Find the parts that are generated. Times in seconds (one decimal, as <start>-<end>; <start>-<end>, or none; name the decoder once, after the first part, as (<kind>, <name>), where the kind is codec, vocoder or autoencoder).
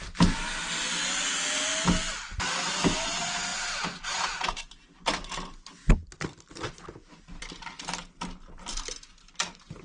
none